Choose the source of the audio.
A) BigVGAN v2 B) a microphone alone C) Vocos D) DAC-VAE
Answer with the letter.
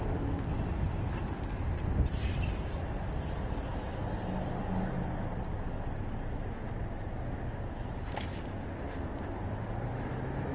B